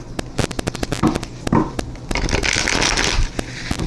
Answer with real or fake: real